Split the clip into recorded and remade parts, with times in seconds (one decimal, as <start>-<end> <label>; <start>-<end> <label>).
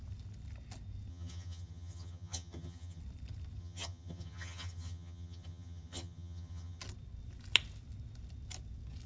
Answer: 0.0-1.1 recorded; 1.1-3.0 remade; 3.0-3.6 recorded; 3.6-6.8 remade; 6.8-9.1 recorded